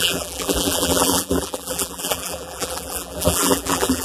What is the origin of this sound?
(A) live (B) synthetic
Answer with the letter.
B